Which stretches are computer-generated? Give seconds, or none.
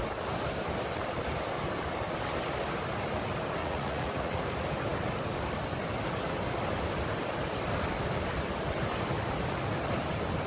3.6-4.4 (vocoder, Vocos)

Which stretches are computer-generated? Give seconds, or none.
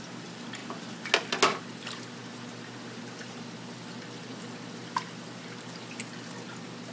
2.2-6.0 (vocoder, BigVGAN v2)